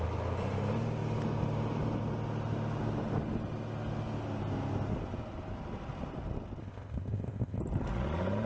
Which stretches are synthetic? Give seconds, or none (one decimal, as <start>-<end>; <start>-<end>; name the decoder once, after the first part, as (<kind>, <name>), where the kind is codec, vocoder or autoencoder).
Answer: 6.6-7.6 (codec, ZipCodec)